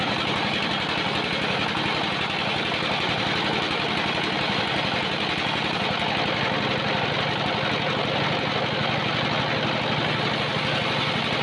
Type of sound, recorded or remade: recorded